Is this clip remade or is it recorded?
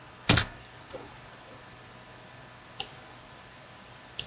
recorded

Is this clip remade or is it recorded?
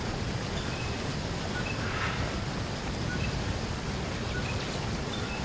recorded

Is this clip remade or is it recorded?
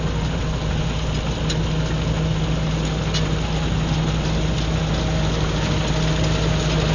recorded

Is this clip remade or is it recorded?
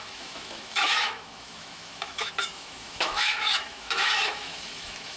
remade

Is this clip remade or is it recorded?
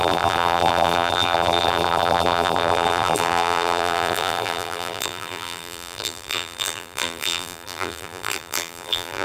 remade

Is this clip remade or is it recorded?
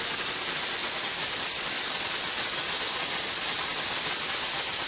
remade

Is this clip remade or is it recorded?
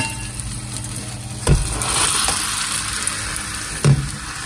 recorded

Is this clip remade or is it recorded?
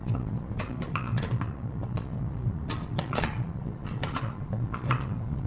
remade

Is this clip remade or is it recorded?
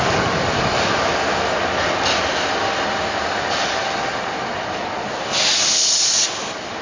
recorded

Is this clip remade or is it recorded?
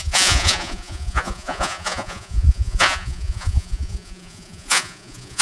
remade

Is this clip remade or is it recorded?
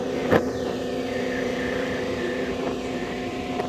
remade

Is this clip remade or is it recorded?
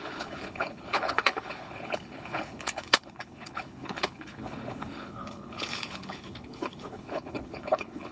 remade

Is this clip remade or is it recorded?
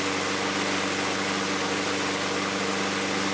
recorded